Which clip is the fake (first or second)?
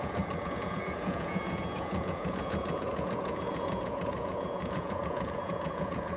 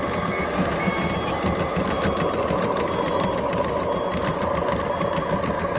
first